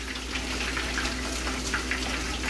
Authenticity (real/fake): real